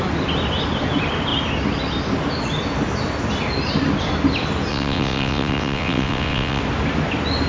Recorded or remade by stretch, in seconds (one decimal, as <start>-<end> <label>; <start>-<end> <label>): 0.0-4.7 recorded; 4.7-6.6 remade; 6.6-7.5 recorded